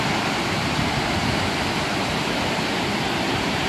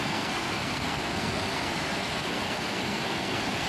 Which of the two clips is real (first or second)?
first